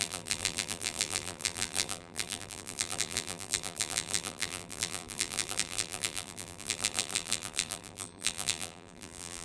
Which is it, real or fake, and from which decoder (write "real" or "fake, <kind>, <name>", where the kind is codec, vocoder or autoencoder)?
fake, vocoder, BigVGAN v2